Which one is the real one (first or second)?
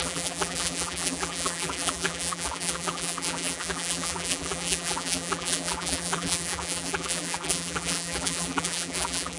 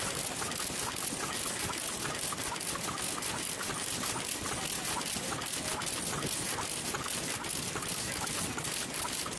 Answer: second